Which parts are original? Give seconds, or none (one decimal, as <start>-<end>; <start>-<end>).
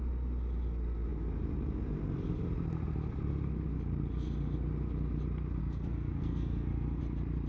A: 0.0-5.6; 7.0-7.5